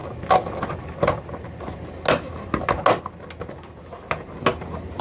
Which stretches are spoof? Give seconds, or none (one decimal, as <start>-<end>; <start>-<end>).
none